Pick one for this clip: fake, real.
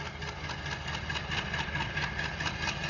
real